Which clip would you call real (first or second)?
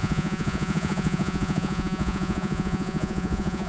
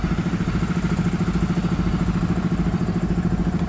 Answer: second